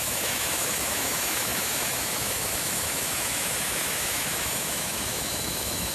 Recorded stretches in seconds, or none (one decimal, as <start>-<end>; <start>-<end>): none